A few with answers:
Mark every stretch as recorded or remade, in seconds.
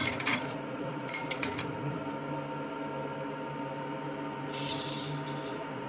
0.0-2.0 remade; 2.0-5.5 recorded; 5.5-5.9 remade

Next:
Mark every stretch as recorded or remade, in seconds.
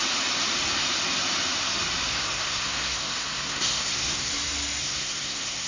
0.0-2.1 recorded; 2.1-4.3 remade; 4.3-4.8 recorded; 4.8-5.7 remade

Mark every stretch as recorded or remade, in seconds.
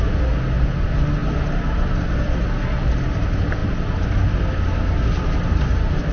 0.0-6.1 recorded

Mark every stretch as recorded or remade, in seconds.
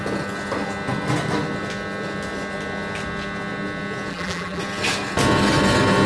0.0-4.1 recorded; 4.1-4.6 remade; 4.6-6.1 recorded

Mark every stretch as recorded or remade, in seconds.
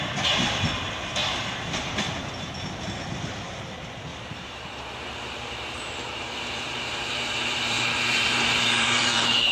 0.0-1.2 recorded; 1.2-2.5 remade; 2.5-4.1 recorded; 4.1-9.5 remade